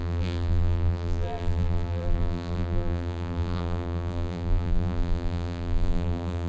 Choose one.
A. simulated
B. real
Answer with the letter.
A